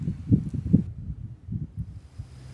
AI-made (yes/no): no